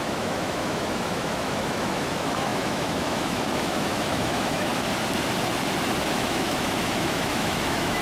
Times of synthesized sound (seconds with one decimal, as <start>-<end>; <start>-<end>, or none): 0.0-4.7; 6.0-8.0